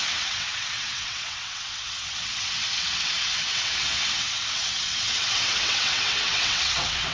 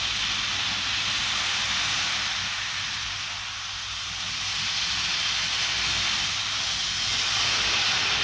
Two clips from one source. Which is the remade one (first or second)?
first